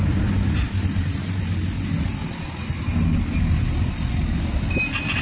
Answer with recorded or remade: recorded